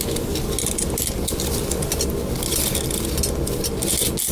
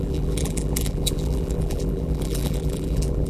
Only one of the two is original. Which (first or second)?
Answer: first